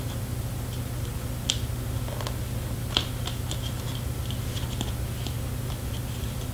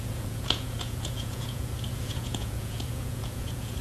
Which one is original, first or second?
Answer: first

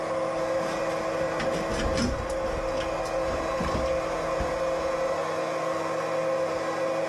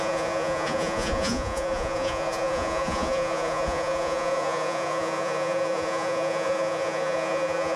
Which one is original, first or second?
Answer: first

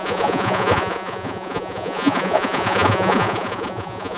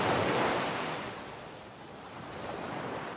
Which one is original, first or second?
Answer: second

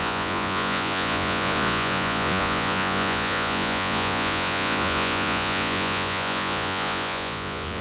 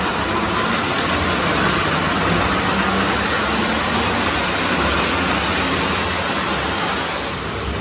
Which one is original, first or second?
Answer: second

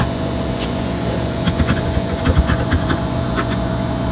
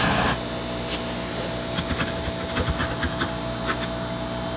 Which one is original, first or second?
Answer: second